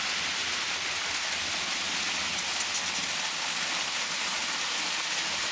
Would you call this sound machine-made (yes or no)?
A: no